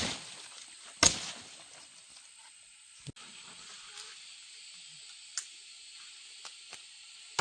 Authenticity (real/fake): real